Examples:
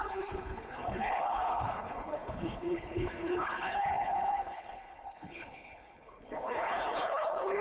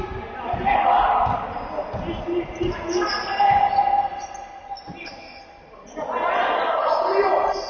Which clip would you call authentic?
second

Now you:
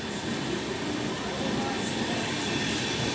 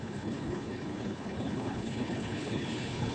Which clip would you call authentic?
first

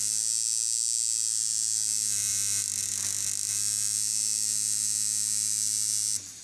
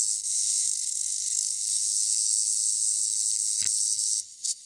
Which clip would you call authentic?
first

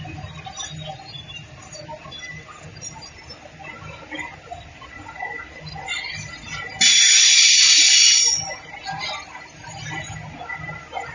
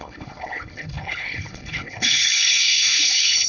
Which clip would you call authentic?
first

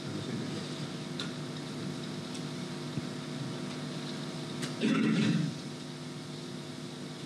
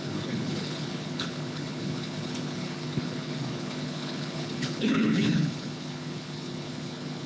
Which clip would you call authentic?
first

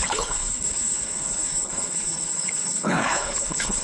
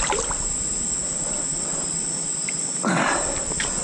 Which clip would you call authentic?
second